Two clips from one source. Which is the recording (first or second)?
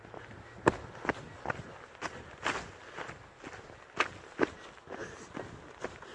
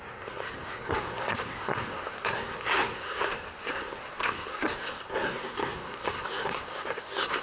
first